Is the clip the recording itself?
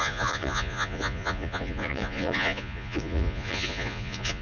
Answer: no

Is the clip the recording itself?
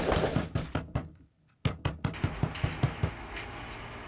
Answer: yes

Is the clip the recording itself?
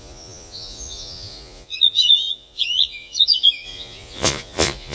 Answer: no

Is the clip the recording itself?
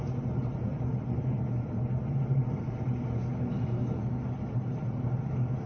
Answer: no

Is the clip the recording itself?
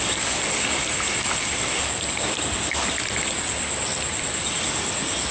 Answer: yes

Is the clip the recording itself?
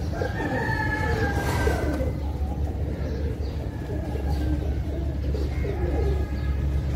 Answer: yes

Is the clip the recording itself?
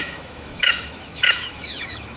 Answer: no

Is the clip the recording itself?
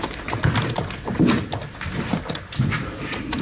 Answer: no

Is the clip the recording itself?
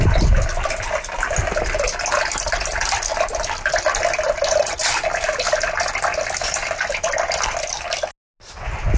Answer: yes